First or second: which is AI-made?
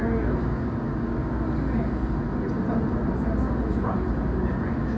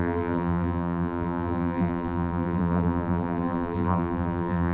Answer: second